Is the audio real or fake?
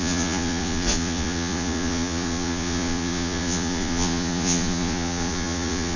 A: fake